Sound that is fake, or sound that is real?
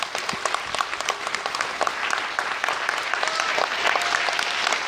real